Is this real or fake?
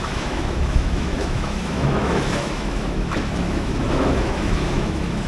fake